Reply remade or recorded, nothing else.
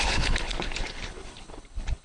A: remade